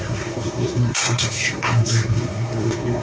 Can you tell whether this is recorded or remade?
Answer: remade